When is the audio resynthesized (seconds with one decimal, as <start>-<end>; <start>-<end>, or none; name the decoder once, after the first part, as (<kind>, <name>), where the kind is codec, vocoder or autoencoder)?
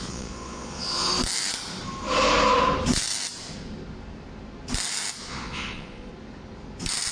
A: 0.0-1.1 (vocoder, Vocos); 5.2-6.1